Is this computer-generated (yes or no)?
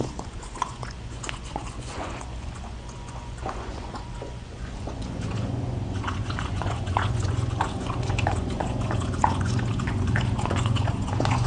yes